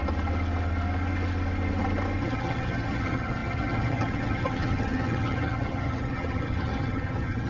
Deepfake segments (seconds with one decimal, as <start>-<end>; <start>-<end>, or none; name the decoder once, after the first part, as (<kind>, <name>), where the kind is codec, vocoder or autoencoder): 2.2-7.5 (vocoder, HiFi-GAN)